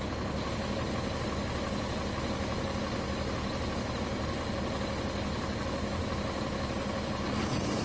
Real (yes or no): yes